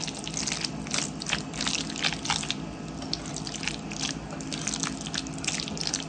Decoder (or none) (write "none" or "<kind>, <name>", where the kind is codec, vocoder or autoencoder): none